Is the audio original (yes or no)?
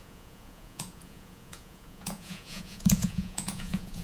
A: no